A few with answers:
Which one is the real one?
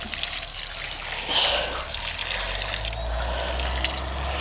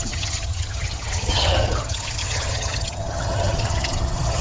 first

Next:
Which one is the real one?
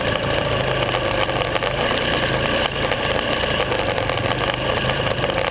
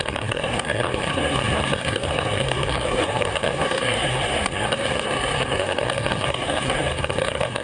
first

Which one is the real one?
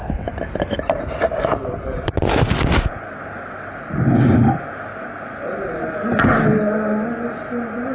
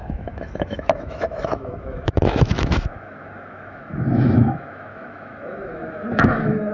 first